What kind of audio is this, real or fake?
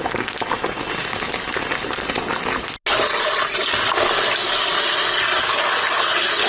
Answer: real